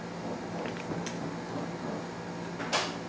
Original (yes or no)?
yes